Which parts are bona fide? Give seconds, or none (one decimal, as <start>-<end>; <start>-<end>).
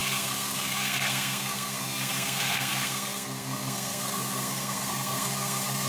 none